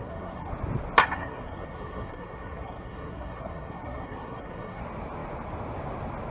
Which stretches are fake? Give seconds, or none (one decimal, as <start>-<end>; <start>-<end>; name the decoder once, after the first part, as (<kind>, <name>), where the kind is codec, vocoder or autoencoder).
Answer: 0.0-0.5 (codec, SNAC); 1.0-4.8